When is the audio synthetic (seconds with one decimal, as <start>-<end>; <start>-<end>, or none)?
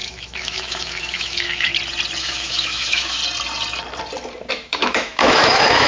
0.0-1.7; 2.2-3.2; 4.5-5.9